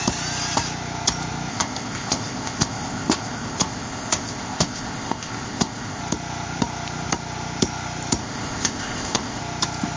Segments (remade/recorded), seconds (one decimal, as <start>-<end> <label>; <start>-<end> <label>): 0.0-1.5 recorded; 1.5-6.0 remade; 6.0-8.2 recorded; 8.2-9.4 remade; 9.4-10.0 recorded